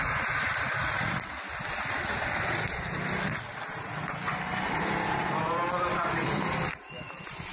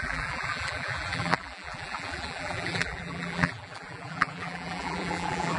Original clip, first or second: first